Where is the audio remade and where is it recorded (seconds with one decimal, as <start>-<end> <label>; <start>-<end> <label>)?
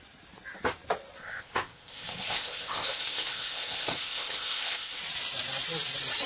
0.0-1.2 recorded; 1.2-5.0 remade; 5.0-6.3 recorded